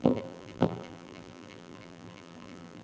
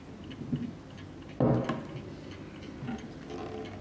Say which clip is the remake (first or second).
first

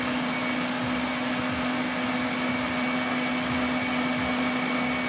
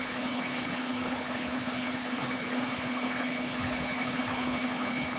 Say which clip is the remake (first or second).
second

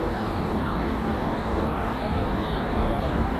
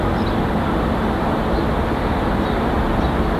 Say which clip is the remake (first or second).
first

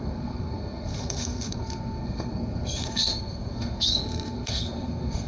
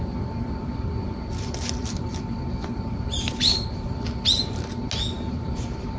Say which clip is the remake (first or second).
first